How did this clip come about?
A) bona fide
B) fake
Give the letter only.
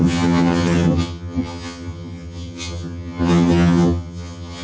B